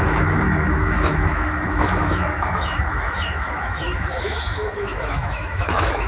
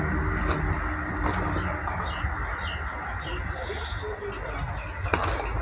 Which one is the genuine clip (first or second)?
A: second